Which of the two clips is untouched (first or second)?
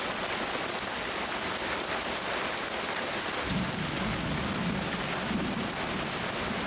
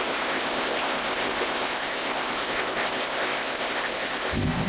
first